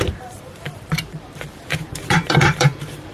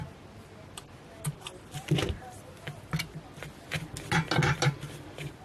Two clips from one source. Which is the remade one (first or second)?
first